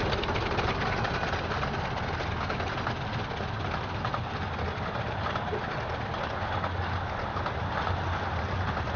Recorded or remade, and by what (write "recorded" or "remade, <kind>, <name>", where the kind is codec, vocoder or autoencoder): recorded